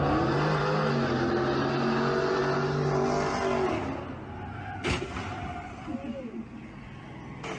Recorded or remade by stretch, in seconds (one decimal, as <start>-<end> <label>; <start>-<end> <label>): 0.0-7.6 recorded